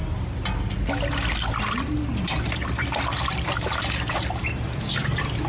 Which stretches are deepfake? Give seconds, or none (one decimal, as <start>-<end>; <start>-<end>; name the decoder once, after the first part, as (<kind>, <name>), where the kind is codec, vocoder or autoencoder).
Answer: none